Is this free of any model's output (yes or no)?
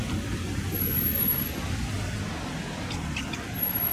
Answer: yes